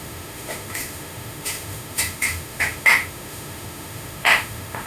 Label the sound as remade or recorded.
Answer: remade